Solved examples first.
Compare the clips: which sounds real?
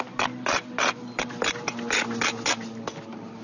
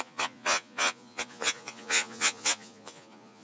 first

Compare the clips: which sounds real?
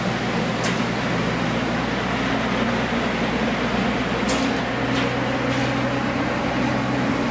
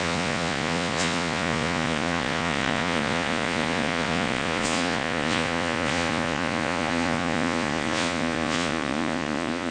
first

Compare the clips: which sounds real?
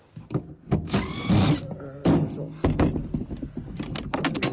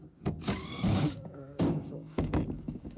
first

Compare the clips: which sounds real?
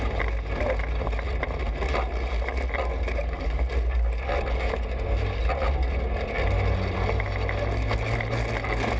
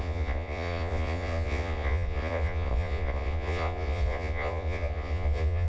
first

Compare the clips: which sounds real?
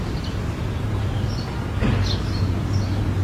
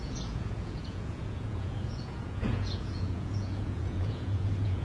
first